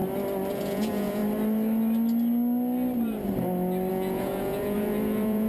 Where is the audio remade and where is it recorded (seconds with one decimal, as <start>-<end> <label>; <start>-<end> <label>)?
0.0-0.5 recorded; 0.5-1.2 remade; 1.2-3.9 recorded; 3.9-5.5 remade